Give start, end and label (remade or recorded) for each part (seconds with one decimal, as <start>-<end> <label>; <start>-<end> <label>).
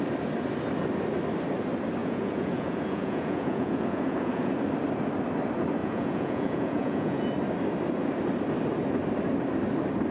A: 0.0-2.0 recorded; 2.0-4.5 remade; 4.5-5.8 recorded; 5.8-7.2 remade; 7.2-10.1 recorded